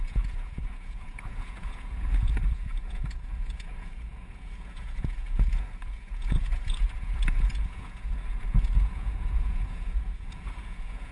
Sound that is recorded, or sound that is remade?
remade